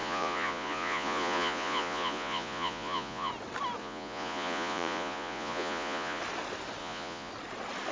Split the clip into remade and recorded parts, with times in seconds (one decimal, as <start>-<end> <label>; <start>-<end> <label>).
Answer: 0.0-3.3 remade; 3.3-3.8 recorded; 3.8-6.2 remade; 6.2-6.8 recorded; 6.8-7.3 remade; 7.3-7.9 recorded